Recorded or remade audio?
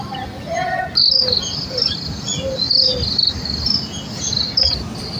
recorded